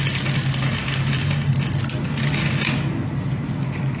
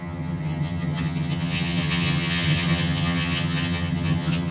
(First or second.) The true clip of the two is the first